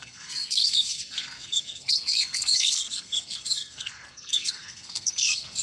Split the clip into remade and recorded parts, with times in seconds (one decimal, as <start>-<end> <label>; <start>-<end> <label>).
0.0-5.6 remade

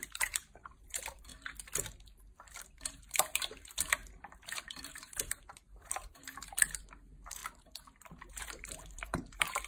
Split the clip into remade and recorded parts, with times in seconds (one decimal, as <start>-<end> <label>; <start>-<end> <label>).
0.0-1.3 remade; 1.3-2.6 recorded; 2.6-4.0 remade; 4.0-4.6 recorded; 4.6-7.4 remade; 7.4-8.3 recorded; 8.3-9.7 remade

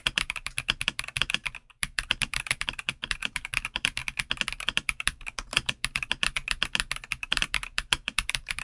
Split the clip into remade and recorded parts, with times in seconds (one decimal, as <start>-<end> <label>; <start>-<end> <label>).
0.0-4.0 remade; 4.0-4.6 recorded; 4.6-6.4 remade; 6.4-7.2 recorded; 7.2-8.6 remade

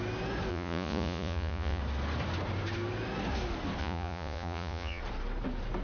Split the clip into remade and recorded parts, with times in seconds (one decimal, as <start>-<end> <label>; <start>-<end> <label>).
0.0-0.5 recorded; 0.5-1.8 remade; 1.8-3.8 recorded; 3.8-5.0 remade; 5.0-5.8 recorded

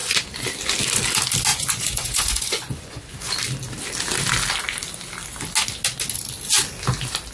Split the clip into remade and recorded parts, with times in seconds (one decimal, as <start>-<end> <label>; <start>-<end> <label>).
0.0-1.5 recorded; 1.5-3.3 remade; 3.3-7.3 recorded